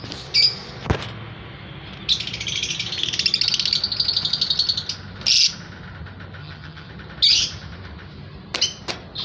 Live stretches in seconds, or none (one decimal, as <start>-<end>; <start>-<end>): 0.0-6.4; 6.9-9.2